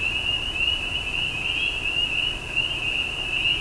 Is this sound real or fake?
real